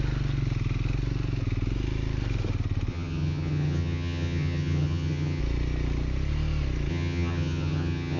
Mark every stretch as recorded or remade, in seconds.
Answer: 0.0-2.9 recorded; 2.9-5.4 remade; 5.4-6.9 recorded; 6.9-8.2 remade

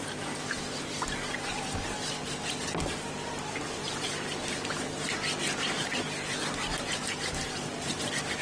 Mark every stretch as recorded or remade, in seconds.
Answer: 0.0-8.4 recorded

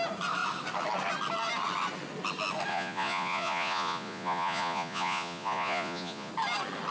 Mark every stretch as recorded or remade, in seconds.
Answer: 0.0-2.7 recorded; 2.7-6.3 remade; 6.3-6.9 recorded

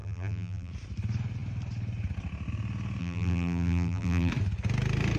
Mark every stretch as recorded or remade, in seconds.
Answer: 0.0-0.7 remade; 0.7-3.0 recorded; 3.0-4.3 remade; 4.3-5.2 recorded